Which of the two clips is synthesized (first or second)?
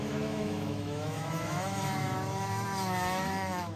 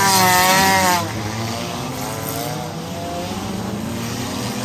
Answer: first